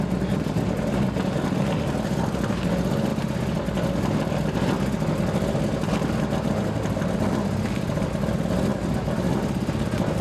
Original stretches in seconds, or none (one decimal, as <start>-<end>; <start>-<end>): 0.0-10.2